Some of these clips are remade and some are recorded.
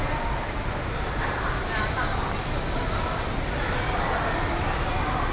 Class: recorded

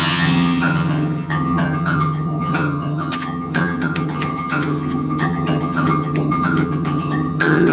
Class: remade